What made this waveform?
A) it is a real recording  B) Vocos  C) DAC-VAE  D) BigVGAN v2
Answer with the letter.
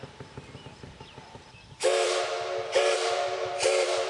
A